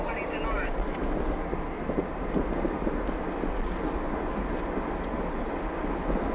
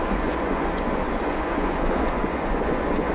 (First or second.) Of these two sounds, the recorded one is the first